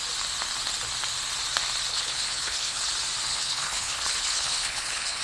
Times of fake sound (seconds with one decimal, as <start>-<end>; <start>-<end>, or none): 1.9-2.9; 3.3-5.2